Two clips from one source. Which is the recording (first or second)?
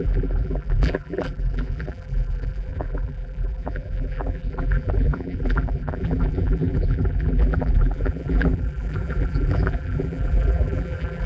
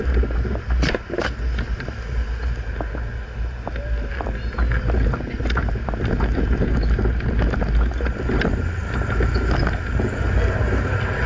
second